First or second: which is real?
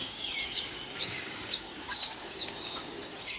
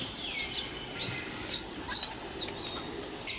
second